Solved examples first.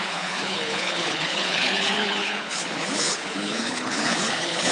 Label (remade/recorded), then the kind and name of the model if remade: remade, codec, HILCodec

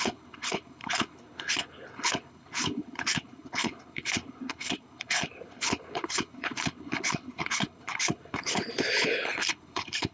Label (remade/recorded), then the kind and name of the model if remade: remade, codec, HILCodec